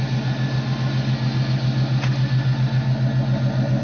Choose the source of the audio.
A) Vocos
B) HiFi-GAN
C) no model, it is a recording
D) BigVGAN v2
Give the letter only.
C